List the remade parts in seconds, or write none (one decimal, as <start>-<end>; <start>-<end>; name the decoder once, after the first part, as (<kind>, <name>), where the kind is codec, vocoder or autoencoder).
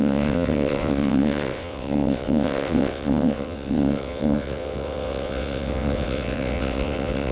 0.0-7.3 (vocoder, WaveNeXt)